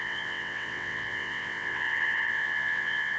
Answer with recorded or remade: remade